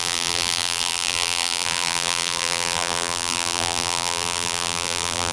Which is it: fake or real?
fake